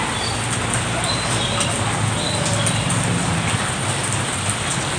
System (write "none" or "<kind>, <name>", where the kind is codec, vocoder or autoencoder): none